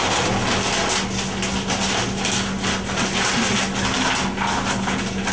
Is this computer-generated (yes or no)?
no